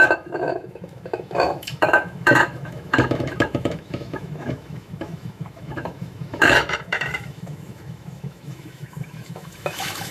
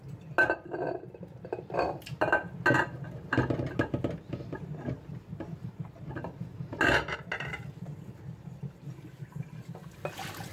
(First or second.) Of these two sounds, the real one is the second